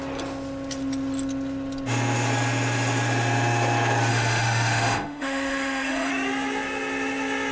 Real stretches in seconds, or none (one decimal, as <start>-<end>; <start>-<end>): 0.0-4.1; 6.1-7.5